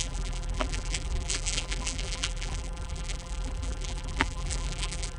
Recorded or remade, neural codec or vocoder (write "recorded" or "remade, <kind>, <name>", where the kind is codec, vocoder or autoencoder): remade, vocoder, BigVGAN v2